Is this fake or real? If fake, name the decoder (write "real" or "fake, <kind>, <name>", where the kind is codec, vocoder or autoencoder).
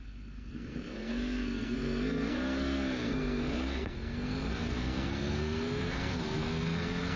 fake, codec, SNAC